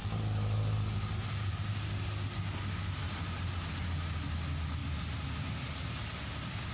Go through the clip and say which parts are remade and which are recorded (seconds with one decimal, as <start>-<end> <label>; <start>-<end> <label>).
0.0-6.7 recorded